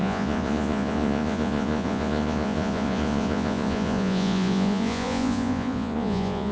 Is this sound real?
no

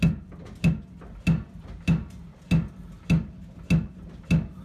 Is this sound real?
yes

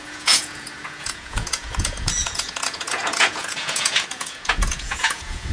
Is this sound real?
no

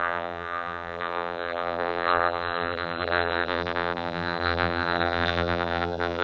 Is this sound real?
no